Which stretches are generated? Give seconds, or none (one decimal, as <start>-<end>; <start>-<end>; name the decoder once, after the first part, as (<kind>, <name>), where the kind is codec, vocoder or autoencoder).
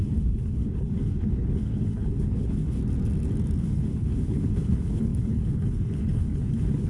0.0-2.8 (codec, HILCodec); 3.6-6.9